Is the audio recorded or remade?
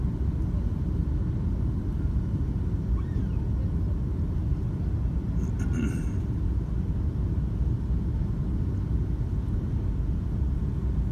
recorded